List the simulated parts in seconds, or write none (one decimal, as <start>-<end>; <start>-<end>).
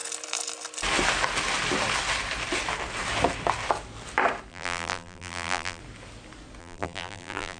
4.5-5.8; 6.6-7.6